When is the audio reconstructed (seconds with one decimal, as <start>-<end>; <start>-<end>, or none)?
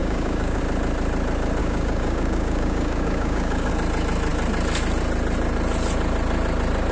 0.0-0.6; 1.6-3.7